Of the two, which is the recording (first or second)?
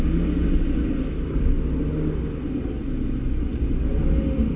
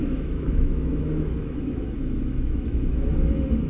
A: first